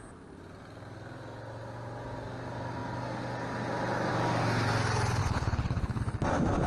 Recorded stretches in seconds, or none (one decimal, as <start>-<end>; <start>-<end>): 0.0-5.2; 6.0-6.7